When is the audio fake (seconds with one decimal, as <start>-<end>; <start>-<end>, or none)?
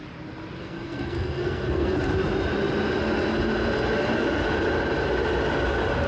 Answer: 0.6-2.1